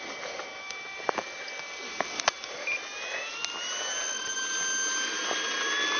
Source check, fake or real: real